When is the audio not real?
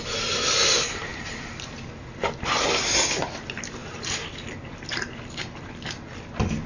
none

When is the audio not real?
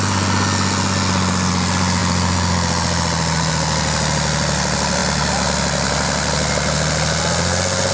none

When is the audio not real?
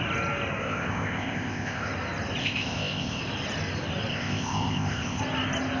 0.6-1.9 (codec, ZipCodec); 2.4-3.2; 4.1-5.2